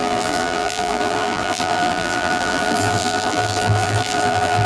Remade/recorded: remade